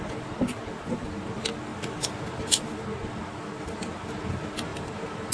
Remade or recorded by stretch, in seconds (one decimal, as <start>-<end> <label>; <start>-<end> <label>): 0.0-5.3 recorded